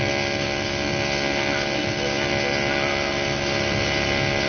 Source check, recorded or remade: recorded